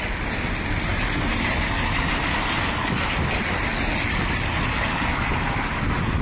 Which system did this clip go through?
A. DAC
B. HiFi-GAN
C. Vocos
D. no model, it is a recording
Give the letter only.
D